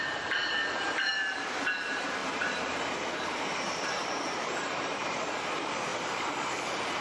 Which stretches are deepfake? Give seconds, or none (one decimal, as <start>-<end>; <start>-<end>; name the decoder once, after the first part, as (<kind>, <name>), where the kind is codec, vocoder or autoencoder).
0.0-7.0 (vocoder, BigVGAN v2)